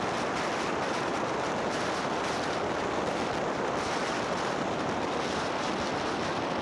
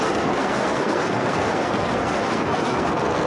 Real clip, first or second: first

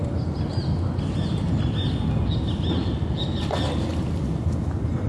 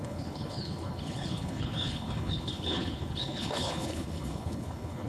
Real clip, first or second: first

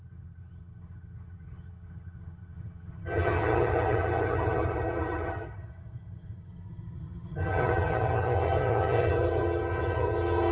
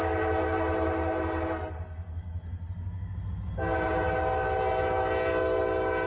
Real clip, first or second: second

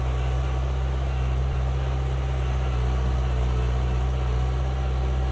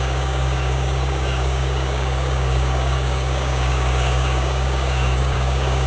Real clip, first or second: first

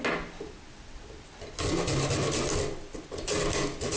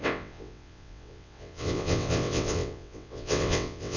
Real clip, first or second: first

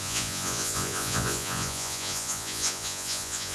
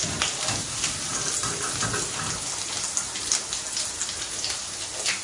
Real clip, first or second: second